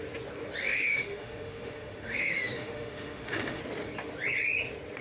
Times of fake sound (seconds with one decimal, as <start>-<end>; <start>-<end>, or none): 0.6-3.6